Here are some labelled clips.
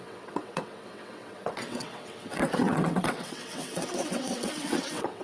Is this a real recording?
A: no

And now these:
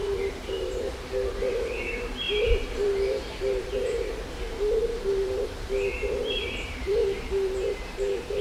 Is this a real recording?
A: no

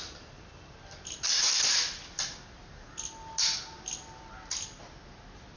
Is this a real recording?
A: yes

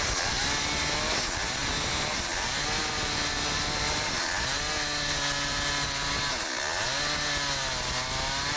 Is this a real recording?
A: yes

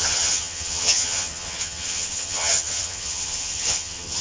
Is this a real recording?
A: no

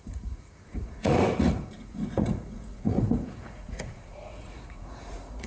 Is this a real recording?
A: no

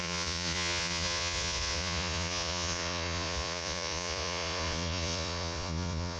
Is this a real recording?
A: no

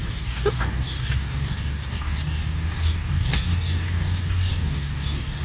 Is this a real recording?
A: no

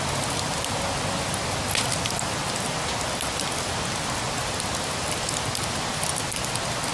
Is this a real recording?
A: yes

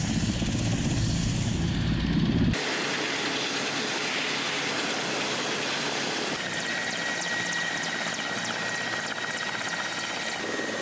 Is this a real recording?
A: yes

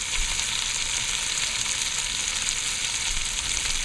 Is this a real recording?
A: yes